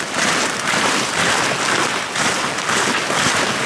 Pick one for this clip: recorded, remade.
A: recorded